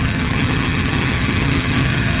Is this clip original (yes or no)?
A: no